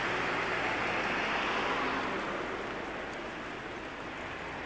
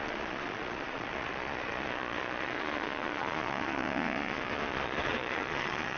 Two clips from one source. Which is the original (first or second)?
first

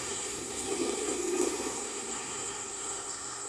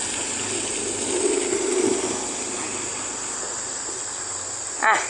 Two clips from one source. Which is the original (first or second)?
second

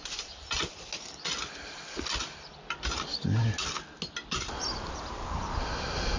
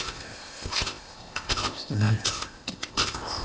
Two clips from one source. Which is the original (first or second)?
first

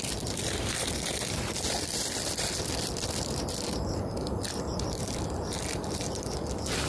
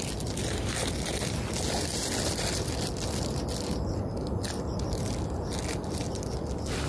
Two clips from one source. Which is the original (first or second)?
second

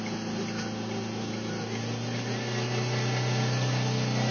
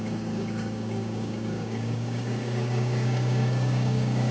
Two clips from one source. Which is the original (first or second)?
first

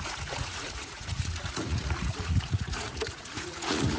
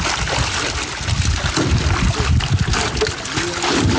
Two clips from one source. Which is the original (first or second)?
second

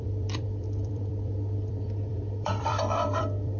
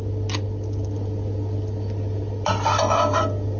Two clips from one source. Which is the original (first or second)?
second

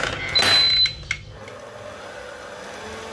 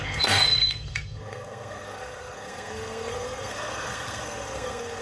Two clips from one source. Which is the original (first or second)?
first